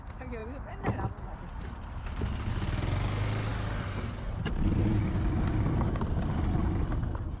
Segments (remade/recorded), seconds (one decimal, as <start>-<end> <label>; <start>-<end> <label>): 0.0-7.4 recorded

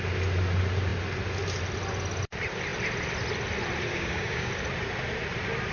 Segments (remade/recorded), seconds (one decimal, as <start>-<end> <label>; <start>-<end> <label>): 0.0-3.9 recorded; 3.9-4.5 remade; 4.5-5.7 recorded